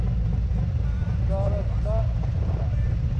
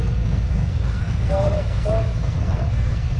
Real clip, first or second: first